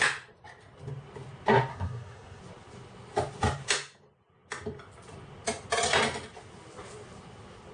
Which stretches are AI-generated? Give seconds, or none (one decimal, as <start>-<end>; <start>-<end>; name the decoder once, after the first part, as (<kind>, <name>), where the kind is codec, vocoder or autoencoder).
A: 1.7-2.4 (codec, SNAC)